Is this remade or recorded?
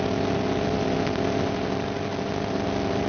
recorded